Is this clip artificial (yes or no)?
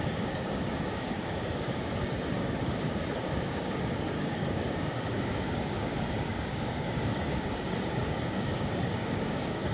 yes